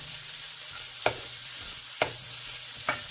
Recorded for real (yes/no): no